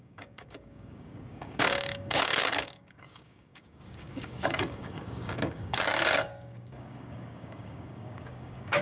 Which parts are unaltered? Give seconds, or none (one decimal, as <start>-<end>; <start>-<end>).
none